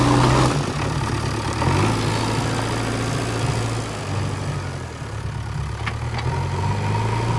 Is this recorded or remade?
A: recorded